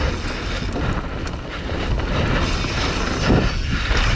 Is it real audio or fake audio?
real